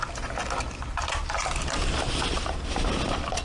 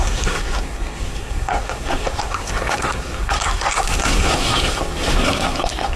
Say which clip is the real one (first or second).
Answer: first